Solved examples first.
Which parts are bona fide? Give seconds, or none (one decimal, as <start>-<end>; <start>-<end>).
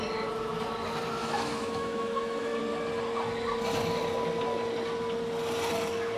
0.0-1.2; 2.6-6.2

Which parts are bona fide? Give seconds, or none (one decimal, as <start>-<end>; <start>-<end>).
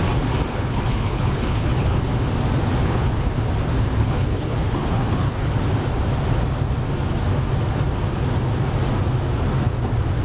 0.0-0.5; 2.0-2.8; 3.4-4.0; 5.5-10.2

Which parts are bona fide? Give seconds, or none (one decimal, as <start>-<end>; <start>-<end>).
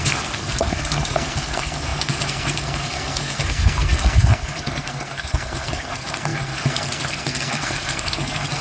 none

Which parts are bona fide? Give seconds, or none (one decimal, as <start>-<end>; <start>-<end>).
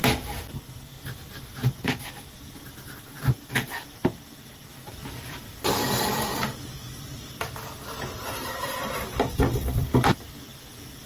0.0-2.4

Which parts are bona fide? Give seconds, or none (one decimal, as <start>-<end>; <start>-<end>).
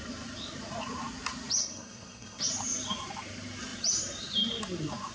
0.0-1.6; 2.4-5.1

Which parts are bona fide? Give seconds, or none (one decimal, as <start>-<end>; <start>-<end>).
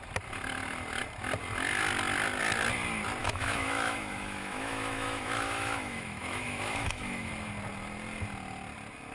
0.0-3.2; 7.3-9.1